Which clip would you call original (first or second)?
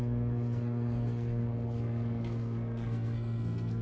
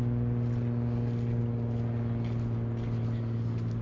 second